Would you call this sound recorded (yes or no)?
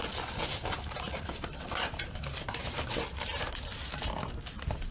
no